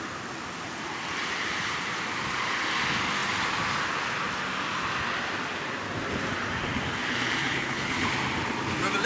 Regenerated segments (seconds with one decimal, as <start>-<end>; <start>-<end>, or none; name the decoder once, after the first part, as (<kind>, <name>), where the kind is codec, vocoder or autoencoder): 7.4-8.1 (codec, HILCodec)